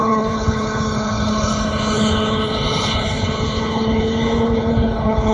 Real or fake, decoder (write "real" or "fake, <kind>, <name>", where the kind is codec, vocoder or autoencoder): fake, codec, HILCodec